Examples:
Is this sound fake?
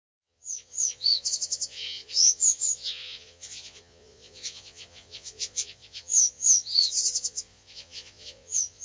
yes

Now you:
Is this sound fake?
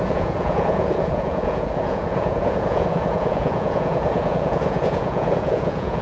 yes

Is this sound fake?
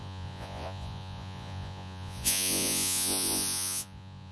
yes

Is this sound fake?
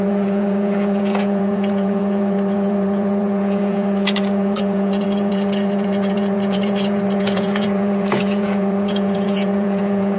yes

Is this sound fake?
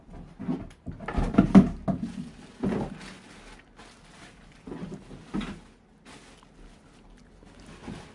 no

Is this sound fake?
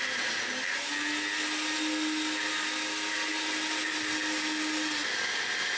no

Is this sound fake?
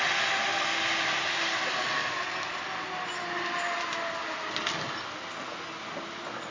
no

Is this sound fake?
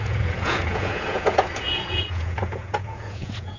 yes